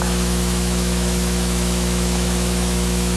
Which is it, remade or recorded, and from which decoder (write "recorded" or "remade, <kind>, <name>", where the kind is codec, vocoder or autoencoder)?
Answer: remade, autoencoder, DAC-VAE